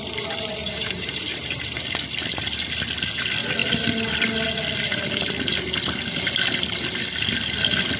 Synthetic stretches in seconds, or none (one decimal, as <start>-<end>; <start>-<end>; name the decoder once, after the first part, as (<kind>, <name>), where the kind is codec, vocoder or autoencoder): 0.6-1.8 (vocoder, BigVGAN v2)